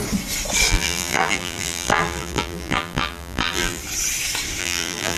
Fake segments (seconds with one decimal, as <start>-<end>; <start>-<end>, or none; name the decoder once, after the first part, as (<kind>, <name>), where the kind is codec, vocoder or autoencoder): 0.7-3.8 (vocoder, BigVGAN v2); 4.6-5.2